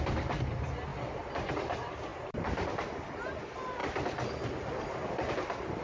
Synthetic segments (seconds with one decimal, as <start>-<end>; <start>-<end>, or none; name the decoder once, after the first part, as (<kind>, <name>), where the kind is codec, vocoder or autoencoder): 0.9-1.5 (vocoder, BigVGAN v2); 2.1-2.7